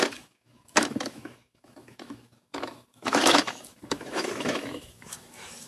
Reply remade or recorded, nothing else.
remade